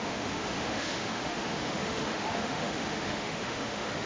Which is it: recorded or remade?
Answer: remade